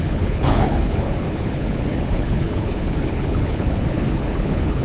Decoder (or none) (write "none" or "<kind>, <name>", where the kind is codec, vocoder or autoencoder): codec, HILCodec